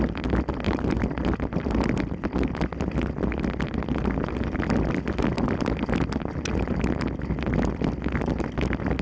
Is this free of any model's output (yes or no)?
yes